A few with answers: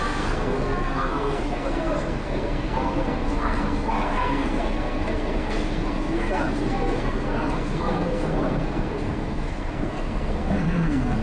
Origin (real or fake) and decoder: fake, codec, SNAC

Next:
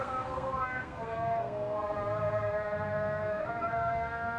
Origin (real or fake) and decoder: fake, codec, SNAC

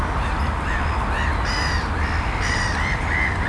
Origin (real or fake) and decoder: real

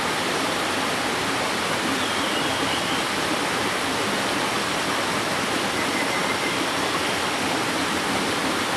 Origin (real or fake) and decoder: real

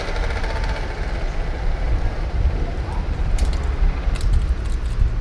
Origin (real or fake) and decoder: real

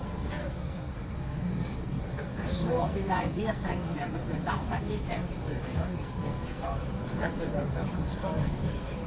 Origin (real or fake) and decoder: fake, codec, SNAC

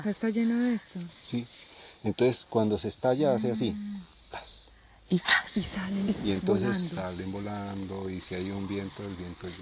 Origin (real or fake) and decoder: real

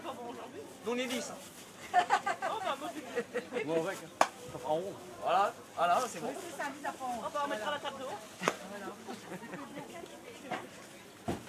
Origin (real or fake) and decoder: real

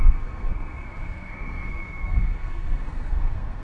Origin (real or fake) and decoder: fake, codec, SNAC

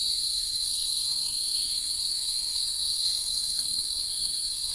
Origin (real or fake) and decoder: fake, codec, SNAC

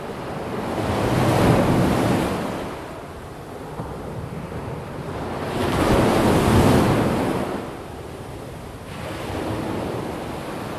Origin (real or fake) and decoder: real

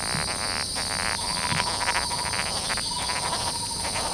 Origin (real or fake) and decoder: real